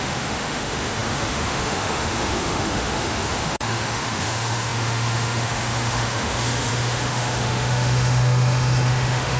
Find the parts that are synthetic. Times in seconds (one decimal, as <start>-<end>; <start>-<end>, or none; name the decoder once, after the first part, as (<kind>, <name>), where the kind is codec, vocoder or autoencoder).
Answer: 0.0-9.4 (autoencoder, DAC-VAE)